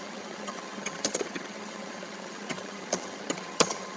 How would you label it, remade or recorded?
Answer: remade